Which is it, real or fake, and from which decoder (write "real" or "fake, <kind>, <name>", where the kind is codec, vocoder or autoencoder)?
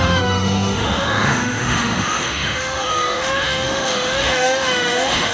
fake, autoencoder, DAC-VAE